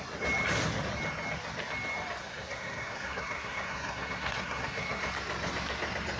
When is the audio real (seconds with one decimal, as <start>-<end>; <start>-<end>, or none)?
0.0-2.2; 5.0-6.2